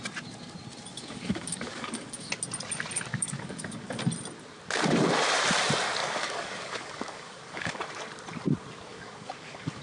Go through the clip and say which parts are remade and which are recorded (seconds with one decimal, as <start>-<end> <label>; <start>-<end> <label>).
0.0-0.9 recorded; 0.9-2.3 remade; 2.3-3.1 recorded; 3.1-4.0 remade; 4.0-6.0 recorded; 6.0-7.8 remade; 7.8-8.9 recorded; 8.9-9.8 remade